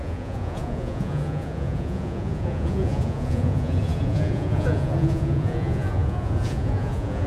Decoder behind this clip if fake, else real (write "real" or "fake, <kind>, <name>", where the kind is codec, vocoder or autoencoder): fake, vocoder, Vocos